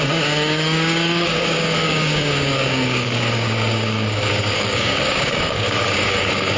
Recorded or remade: remade